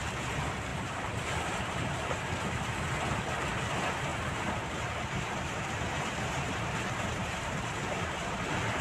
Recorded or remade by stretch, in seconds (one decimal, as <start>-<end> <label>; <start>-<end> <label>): 0.0-0.7 recorded; 0.7-2.4 remade; 2.4-4.1 recorded; 4.1-8.4 remade; 8.4-8.8 recorded